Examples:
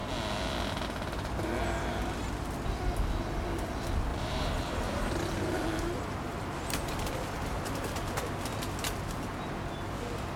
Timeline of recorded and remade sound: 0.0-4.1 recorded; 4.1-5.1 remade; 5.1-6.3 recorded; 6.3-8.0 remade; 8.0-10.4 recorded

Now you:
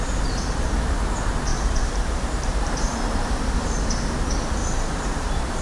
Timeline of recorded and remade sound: 0.0-1.5 recorded; 1.5-3.3 remade; 3.3-4.6 recorded; 4.6-5.6 remade

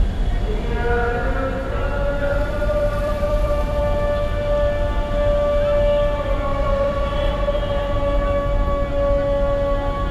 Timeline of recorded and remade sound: 0.0-2.3 recorded; 2.3-3.8 remade; 3.8-6.5 recorded; 6.5-7.3 remade; 7.3-10.1 recorded

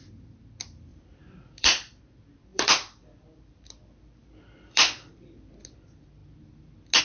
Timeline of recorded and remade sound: 0.0-0.9 recorded; 0.9-2.0 remade; 2.0-2.5 recorded; 2.5-5.5 remade; 5.5-7.0 recorded

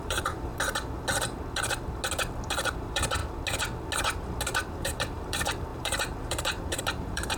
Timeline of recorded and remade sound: 0.0-0.5 remade; 0.5-2.7 recorded; 2.7-3.2 remade; 3.2-4.7 recorded; 4.7-7.4 remade